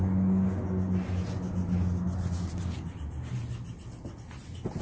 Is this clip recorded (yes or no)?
yes